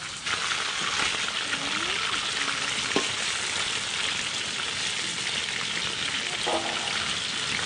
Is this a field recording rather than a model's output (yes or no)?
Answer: yes